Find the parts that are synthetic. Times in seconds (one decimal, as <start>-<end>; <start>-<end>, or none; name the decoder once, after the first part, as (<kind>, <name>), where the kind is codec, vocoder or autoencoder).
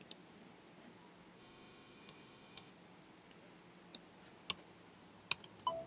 1.4-2.7 (autoencoder, DAC-VAE)